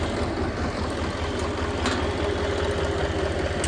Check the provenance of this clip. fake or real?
real